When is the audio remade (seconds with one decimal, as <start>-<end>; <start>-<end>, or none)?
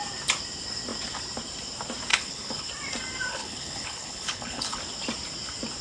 2.1-2.7; 3.3-4.8